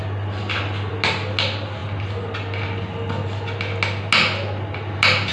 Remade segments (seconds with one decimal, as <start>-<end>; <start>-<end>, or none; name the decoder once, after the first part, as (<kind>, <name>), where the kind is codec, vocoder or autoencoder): none